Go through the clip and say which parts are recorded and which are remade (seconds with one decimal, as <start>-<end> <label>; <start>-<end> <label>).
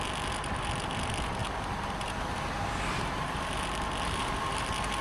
0.0-5.0 recorded